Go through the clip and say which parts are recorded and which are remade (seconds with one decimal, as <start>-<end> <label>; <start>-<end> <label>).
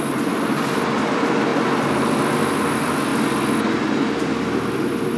0.0-3.1 remade; 3.1-4.0 recorded; 4.0-5.2 remade